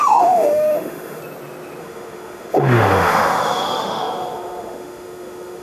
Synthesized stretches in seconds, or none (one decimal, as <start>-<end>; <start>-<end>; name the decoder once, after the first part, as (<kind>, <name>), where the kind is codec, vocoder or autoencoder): 0.0-1.2 (autoencoder, DAC-VAE); 1.8-5.6